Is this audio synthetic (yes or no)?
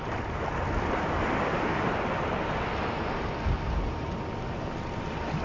no